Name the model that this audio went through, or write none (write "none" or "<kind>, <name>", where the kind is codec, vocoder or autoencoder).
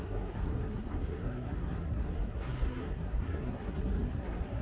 codec, SNAC